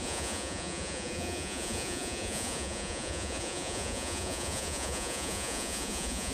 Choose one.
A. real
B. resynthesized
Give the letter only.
B